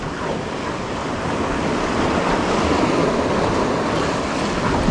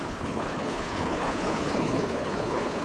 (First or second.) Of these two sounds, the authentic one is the first